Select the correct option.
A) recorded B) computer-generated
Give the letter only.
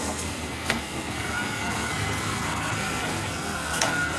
B